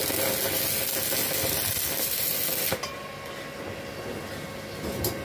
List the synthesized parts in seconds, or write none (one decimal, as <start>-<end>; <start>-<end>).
none